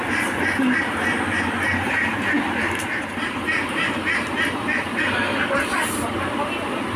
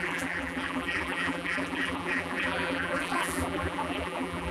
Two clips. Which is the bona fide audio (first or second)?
first